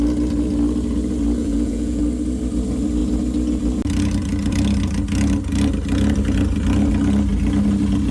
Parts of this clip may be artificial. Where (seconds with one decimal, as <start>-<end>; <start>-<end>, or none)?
1.4-2.0